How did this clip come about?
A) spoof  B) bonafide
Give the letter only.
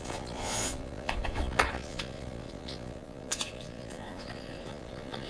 A